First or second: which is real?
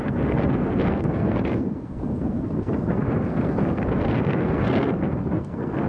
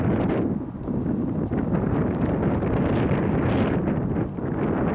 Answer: second